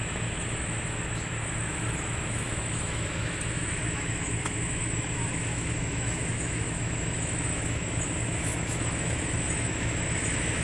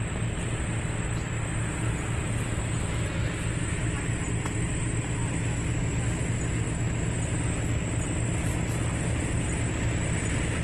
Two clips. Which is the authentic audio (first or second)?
second